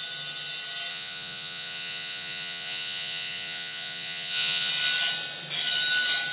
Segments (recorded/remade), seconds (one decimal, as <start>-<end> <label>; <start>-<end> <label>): 0.0-0.9 recorded; 0.9-4.7 remade; 4.7-6.3 recorded